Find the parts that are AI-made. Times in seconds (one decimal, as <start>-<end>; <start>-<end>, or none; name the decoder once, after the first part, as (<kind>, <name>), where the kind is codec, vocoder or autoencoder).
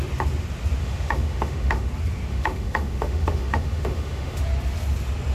0.8-1.9 (autoencoder, DAC-VAE); 2.3-4.4